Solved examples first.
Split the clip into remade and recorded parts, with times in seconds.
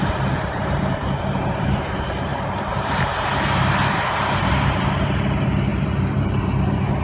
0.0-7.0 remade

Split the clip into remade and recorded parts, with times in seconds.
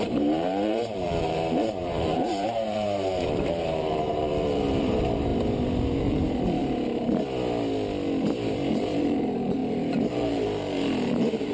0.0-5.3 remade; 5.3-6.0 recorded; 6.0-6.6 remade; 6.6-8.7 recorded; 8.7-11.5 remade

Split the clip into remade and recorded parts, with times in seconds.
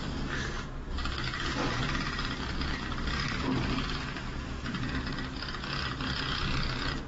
0.0-3.2 recorded; 3.2-3.7 remade; 3.7-7.1 recorded